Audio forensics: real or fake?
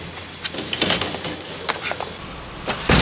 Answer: real